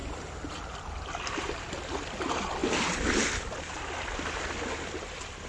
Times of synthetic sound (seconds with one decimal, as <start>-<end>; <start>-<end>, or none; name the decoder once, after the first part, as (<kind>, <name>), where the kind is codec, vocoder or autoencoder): none